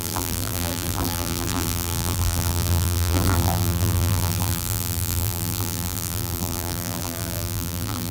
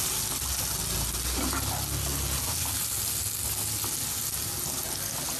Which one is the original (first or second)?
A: second